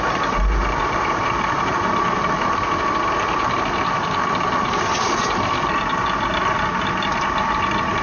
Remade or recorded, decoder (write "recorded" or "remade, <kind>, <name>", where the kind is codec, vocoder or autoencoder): recorded